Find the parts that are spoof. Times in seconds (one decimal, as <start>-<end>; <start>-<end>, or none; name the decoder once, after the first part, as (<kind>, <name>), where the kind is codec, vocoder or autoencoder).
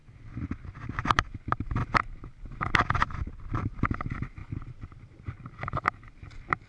none